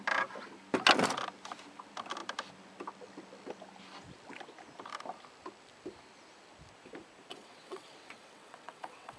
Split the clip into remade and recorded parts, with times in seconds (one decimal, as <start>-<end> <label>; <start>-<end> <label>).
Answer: 0.0-7.3 recorded; 7.3-9.2 remade